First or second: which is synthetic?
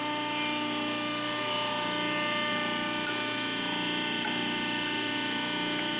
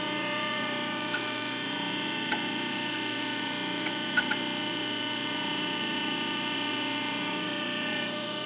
second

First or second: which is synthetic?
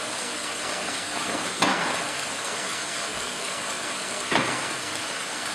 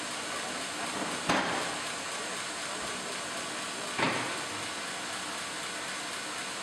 first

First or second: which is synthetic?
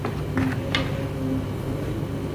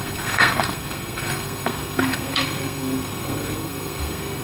second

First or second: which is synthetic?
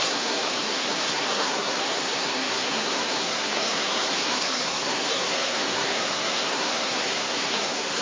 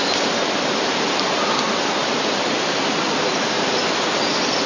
first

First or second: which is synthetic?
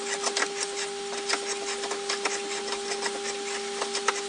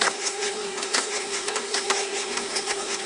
second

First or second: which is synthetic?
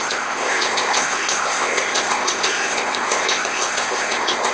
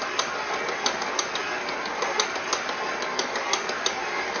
first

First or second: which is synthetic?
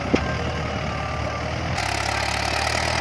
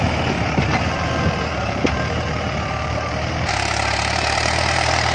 second